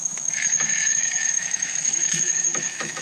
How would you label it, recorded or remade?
remade